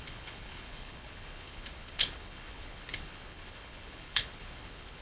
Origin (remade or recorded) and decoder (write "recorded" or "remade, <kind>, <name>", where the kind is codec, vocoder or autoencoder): remade, codec, HILCodec